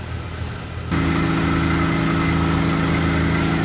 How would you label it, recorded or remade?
recorded